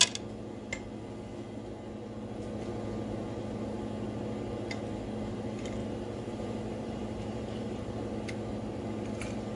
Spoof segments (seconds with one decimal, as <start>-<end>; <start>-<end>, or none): 5.8-8.1